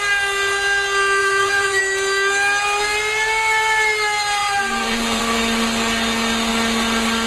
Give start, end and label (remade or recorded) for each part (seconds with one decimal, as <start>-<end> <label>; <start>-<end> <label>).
0.0-1.2 recorded; 1.2-1.8 remade; 1.8-4.4 recorded; 4.4-5.2 remade; 5.2-7.3 recorded